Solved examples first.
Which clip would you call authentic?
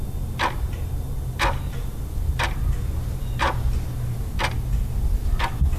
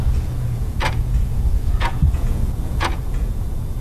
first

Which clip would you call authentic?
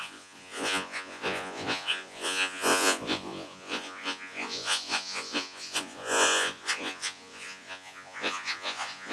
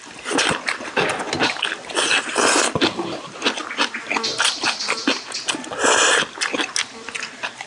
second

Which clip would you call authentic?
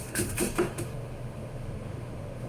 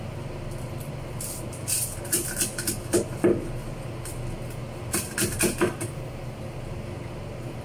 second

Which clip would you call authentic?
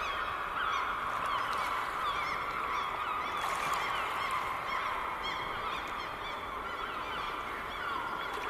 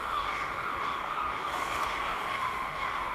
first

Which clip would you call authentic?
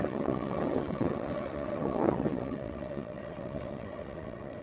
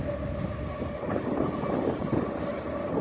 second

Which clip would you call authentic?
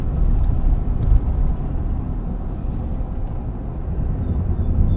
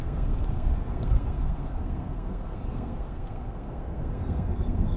first